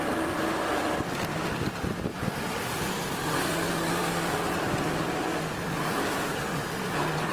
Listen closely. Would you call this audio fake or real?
real